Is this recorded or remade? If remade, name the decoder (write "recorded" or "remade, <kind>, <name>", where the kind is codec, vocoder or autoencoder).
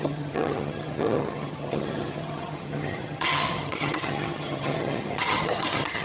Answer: remade, vocoder, HiFi-GAN